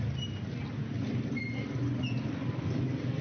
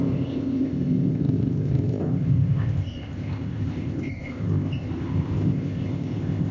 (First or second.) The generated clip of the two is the second